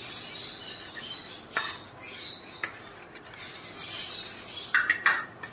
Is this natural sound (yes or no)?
yes